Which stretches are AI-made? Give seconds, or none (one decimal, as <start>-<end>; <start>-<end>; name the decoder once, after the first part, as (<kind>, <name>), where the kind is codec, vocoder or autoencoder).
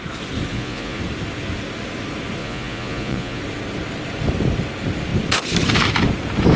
0.5-1.0 (vocoder, Vocos); 2.4-3.4